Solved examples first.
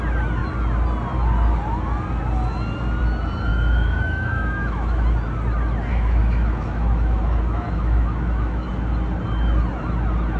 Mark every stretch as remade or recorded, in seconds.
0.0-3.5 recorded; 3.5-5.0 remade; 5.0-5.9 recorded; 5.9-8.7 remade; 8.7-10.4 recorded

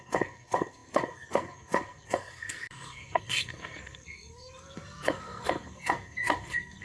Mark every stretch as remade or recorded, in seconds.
0.0-6.8 remade

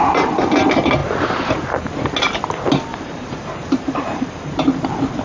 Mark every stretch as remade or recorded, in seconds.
0.0-1.0 recorded; 1.0-1.7 remade; 1.7-2.9 recorded; 2.9-4.2 remade; 4.2-5.2 recorded

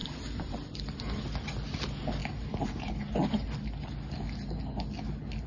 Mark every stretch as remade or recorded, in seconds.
0.0-1.2 remade; 1.2-2.2 recorded; 2.2-2.9 remade; 2.9-5.5 recorded

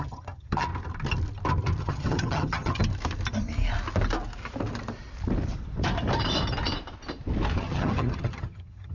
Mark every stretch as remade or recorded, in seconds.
0.0-0.7 remade; 0.7-1.8 recorded; 1.8-2.8 remade; 2.8-7.6 recorded; 7.6-8.9 remade

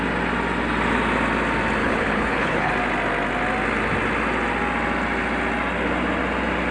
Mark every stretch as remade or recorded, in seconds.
0.0-1.8 recorded; 1.8-2.7 remade; 2.7-6.7 recorded

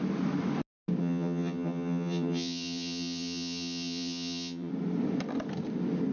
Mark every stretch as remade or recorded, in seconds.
0.0-1.0 recorded; 1.0-4.7 remade; 4.7-6.1 recorded